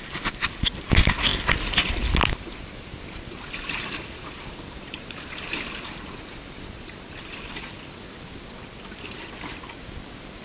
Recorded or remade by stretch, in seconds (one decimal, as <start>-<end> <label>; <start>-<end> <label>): 0.0-10.4 recorded